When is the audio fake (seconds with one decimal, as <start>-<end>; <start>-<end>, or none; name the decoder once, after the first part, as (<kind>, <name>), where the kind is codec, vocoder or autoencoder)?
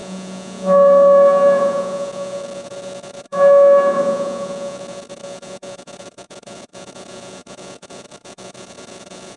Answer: 0.0-9.4 (vocoder, Vocos)